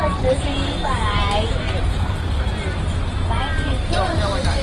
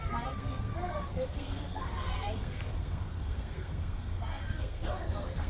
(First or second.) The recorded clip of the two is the first